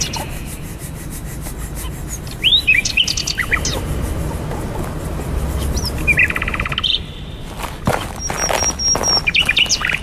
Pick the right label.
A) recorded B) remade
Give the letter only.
A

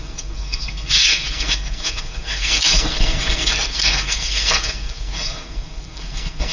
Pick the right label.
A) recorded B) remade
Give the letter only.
B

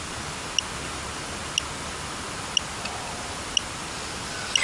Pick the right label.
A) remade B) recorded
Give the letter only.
B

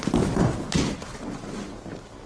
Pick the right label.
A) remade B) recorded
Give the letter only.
B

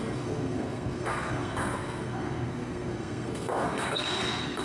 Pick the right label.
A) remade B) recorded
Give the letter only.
A